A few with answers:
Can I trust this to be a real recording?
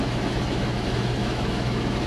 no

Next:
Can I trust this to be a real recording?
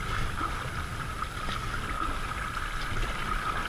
yes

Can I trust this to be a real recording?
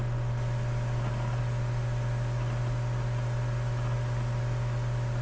yes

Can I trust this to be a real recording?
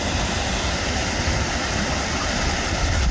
yes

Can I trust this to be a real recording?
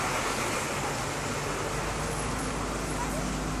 yes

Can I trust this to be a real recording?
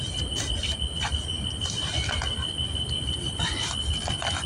yes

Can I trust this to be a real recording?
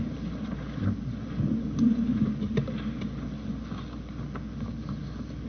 yes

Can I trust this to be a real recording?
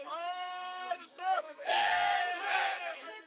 no